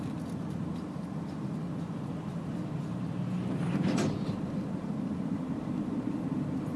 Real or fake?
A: fake